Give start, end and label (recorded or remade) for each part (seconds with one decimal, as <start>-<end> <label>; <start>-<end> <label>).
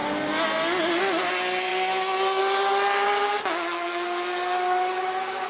0.0-5.5 recorded